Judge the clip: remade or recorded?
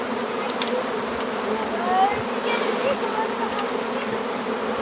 recorded